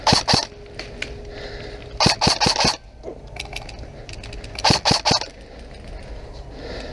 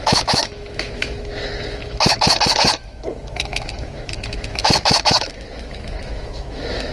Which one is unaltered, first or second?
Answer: first